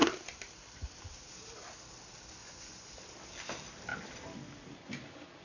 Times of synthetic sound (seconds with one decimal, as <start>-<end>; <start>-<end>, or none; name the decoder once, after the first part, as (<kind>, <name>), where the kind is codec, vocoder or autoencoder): 2.4-2.9 (vocoder, Vocos)